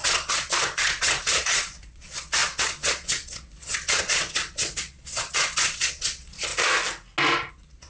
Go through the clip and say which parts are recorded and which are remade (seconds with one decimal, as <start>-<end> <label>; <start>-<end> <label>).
0.0-6.5 remade; 6.5-7.5 recorded; 7.5-7.9 remade